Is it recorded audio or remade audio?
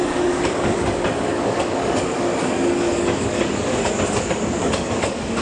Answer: remade